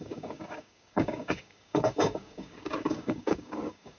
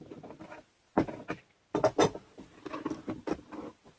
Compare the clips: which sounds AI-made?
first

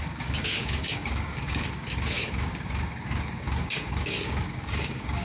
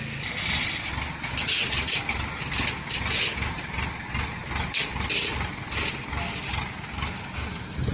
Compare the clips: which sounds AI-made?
first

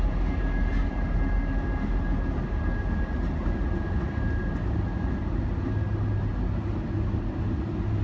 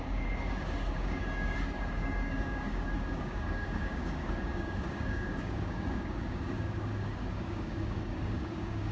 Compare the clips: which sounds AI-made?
second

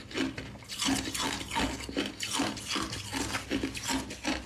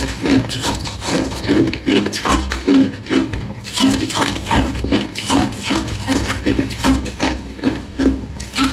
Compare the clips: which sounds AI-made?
second